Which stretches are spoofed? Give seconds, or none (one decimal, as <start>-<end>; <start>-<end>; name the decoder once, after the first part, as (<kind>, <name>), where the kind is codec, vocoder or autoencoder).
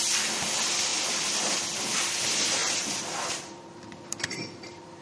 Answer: 0.9-1.6 (vocoder, BigVGAN v2); 2.6-5.0